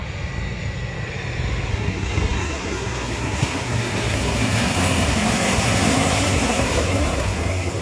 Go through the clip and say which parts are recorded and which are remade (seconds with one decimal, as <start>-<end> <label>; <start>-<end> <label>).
0.0-1.7 recorded; 1.7-7.8 remade